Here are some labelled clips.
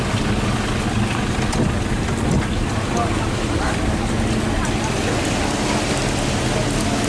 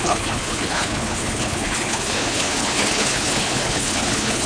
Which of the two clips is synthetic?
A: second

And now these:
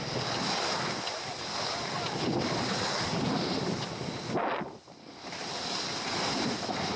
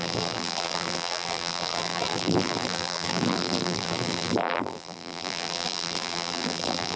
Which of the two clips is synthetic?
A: second